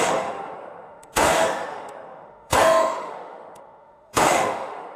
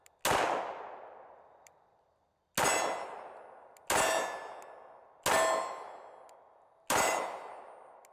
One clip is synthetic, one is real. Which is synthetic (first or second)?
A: first